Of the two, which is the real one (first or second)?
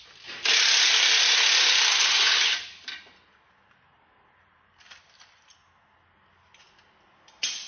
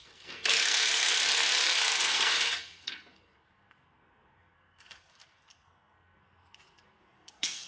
first